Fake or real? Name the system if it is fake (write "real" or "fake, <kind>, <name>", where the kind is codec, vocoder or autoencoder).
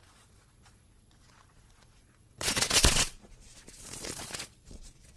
fake, vocoder, Vocos